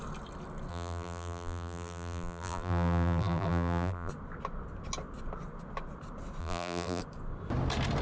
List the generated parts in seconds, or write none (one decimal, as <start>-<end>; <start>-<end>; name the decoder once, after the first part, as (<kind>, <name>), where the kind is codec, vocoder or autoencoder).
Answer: 0.7-4.1 (vocoder, BigVGAN v2); 6.4-7.0